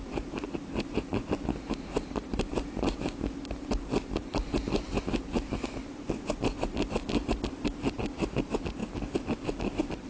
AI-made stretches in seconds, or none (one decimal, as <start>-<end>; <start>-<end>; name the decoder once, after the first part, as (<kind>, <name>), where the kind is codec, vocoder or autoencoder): none